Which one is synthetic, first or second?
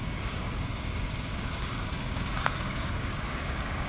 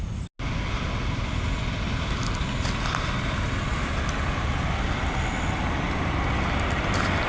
first